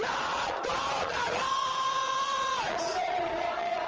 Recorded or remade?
remade